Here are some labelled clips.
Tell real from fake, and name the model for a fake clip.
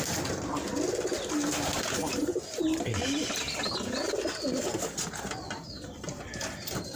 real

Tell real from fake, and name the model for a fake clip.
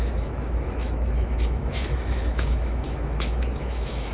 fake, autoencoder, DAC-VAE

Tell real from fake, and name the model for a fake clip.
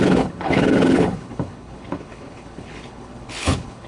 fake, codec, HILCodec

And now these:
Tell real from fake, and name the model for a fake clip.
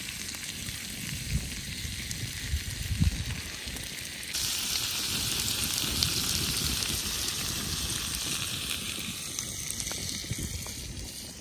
real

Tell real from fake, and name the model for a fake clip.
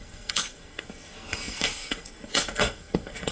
fake, codec, SNAC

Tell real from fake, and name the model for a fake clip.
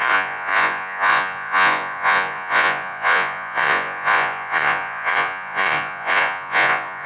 fake, vocoder, Vocos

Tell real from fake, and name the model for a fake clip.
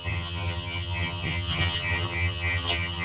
fake, vocoder, HiFi-GAN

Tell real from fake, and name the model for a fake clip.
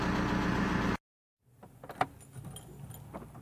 real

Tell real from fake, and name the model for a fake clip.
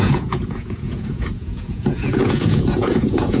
fake, vocoder, Vocos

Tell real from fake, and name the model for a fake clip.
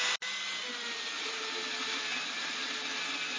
real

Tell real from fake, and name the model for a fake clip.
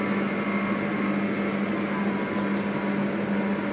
real